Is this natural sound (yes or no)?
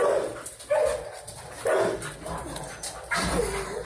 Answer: yes